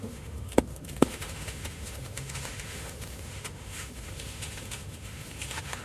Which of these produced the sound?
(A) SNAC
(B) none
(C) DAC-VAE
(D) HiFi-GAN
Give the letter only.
C